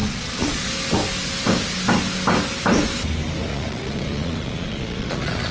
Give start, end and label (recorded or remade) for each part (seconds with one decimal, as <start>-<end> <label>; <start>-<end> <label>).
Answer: 0.0-0.7 remade; 0.7-3.5 recorded; 3.5-5.5 remade